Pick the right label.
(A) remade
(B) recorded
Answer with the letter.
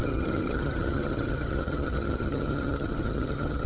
A